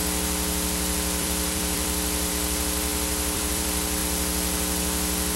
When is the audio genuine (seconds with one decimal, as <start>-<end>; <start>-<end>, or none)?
4.0-5.4